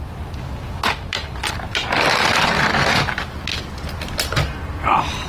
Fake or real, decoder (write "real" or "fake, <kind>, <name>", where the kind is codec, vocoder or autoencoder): real